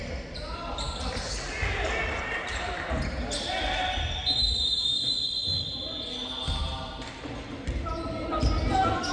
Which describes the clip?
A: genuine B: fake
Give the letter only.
A